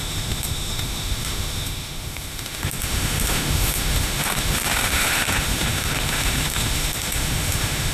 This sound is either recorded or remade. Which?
remade